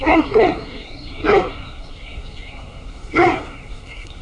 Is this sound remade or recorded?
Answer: remade